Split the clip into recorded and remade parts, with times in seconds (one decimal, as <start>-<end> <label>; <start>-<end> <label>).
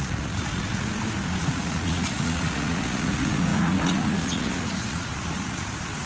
0.0-0.9 remade; 0.9-1.4 recorded; 1.4-6.1 remade